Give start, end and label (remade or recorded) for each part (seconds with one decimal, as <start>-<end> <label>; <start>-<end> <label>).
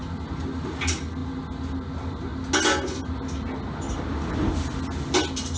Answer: 0.0-5.6 recorded